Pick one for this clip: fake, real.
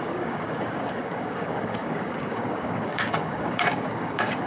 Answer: fake